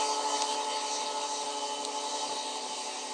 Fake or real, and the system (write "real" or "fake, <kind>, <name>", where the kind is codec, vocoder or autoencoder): real